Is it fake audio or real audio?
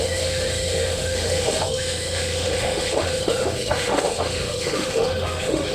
fake